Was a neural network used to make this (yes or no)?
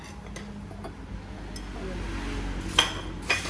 no